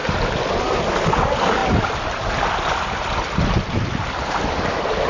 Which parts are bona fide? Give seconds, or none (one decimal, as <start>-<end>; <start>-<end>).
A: 0.0-5.1